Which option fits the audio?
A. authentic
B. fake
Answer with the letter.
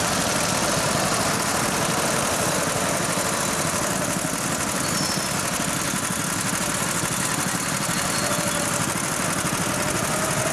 A